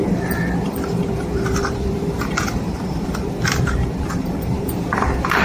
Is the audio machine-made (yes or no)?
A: yes